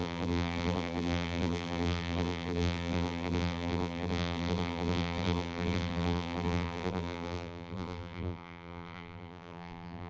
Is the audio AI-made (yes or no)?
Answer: yes